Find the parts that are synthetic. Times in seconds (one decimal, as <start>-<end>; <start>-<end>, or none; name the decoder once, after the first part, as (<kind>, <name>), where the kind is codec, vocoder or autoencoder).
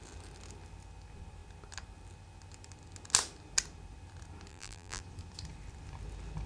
4.5-5.0 (vocoder, BigVGAN v2)